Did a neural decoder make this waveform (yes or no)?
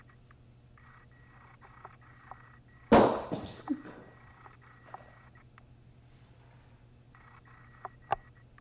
no